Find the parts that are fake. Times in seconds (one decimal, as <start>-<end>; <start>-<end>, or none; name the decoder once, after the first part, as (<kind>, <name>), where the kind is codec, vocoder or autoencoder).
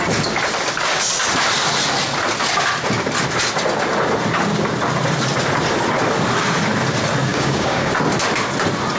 7.3-7.9 (codec, DAC)